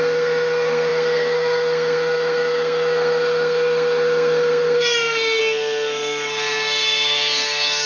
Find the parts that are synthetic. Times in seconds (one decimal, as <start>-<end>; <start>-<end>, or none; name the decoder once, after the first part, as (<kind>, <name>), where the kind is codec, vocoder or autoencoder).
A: 0.0-7.9 (codec, SNAC)